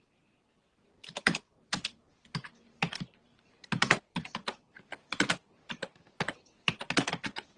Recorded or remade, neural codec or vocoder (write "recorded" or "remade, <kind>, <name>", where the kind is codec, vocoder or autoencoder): remade, vocoder, BigVGAN v2